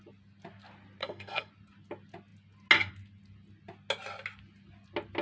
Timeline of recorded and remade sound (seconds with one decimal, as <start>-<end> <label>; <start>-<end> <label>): 0.0-1.0 recorded; 1.0-1.5 remade; 1.5-5.2 recorded